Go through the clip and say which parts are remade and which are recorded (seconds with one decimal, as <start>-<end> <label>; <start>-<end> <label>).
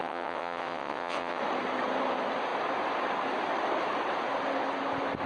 0.0-1.4 remade; 1.4-5.3 recorded